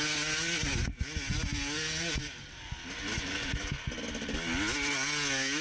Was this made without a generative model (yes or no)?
yes